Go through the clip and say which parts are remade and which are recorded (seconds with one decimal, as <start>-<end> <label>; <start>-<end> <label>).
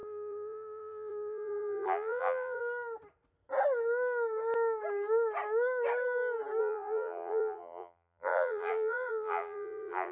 0.0-2.6 remade; 2.6-6.6 recorded; 6.6-10.1 remade